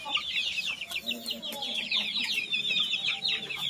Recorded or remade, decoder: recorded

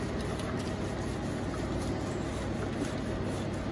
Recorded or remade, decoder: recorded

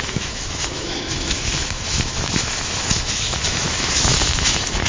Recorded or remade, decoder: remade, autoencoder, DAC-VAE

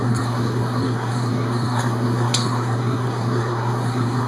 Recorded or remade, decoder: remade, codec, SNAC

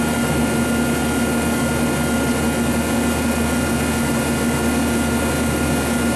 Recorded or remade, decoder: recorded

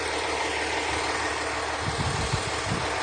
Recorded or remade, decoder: recorded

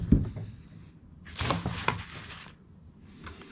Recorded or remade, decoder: recorded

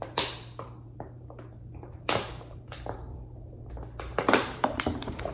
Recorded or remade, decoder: remade, vocoder, BigVGAN v2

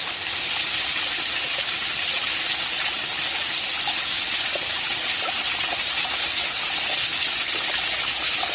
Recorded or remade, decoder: recorded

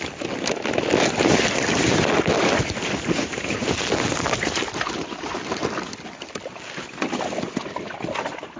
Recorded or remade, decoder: recorded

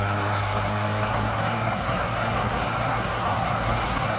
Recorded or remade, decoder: remade, codec, SNAC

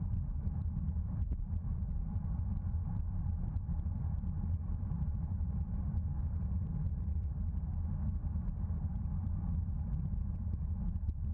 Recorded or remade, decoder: remade, vocoder, BigVGAN v2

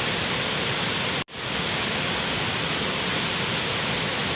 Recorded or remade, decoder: recorded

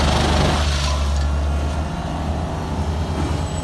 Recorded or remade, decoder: recorded